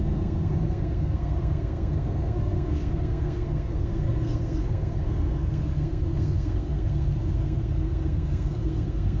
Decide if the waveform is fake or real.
fake